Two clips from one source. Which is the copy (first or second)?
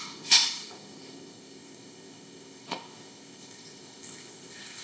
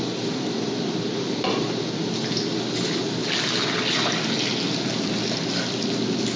first